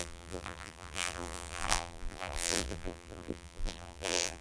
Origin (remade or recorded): remade